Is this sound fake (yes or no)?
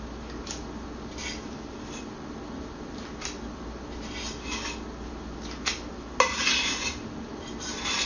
no